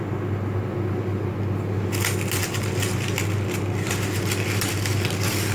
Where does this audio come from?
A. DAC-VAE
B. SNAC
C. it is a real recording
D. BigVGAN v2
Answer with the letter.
C